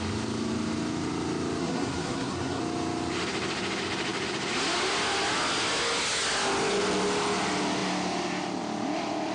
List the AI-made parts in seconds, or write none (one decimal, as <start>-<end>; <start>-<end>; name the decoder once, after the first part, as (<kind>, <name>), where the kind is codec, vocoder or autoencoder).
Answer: 1.6-2.6 (codec, SNAC)